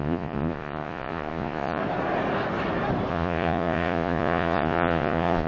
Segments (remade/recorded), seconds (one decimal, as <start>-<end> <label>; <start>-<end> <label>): 0.0-1.8 remade; 1.8-3.1 recorded; 3.1-5.5 remade